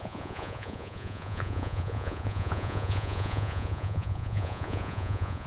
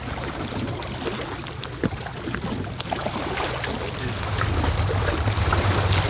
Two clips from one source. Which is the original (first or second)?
second